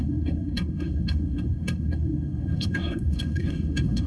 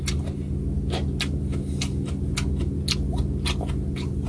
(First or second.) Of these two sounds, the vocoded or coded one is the first